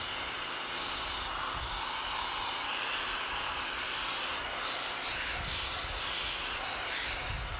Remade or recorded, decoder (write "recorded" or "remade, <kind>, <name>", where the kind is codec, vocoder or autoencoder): recorded